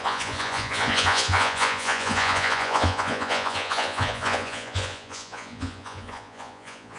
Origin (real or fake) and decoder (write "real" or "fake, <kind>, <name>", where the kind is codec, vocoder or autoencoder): fake, vocoder, Vocos